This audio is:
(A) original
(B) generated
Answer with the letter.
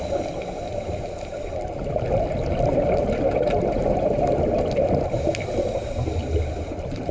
B